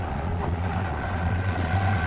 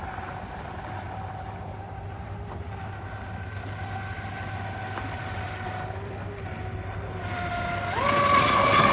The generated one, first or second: first